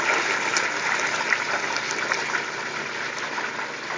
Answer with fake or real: real